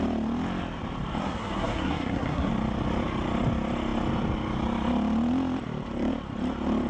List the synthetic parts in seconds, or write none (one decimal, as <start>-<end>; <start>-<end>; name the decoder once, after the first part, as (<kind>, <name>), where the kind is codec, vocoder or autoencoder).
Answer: 1.2-2.5 (codec, SNAC)